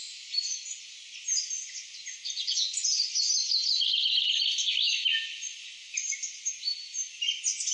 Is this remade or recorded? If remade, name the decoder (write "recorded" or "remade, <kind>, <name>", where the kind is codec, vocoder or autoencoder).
recorded